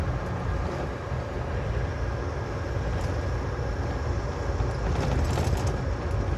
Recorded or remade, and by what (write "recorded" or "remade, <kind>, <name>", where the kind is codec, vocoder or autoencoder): recorded